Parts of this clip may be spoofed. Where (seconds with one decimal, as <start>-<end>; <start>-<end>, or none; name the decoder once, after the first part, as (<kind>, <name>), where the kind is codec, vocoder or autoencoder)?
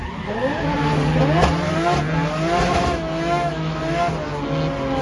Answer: 2.7-3.8 (autoencoder, DAC-VAE)